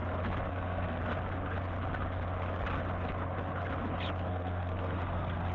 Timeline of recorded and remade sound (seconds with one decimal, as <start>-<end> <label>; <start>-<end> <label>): 0.0-0.5 recorded; 0.5-1.0 remade; 1.0-4.3 recorded; 4.3-5.5 remade